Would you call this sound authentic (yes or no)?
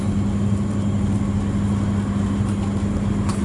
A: yes